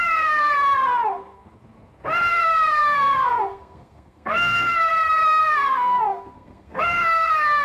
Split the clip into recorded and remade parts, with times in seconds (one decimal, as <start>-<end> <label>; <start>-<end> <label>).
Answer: 0.0-0.5 remade; 0.5-2.3 recorded; 2.3-4.9 remade; 4.9-5.4 recorded; 5.4-7.6 remade